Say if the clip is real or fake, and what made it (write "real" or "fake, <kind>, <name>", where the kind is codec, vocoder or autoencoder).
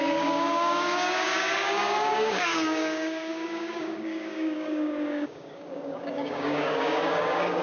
fake, codec, DAC